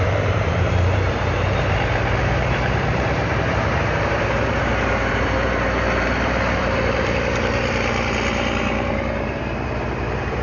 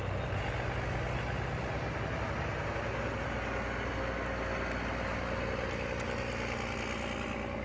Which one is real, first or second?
second